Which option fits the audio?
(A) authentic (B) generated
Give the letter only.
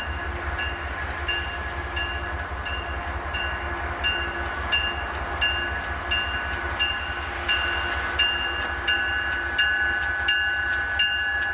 A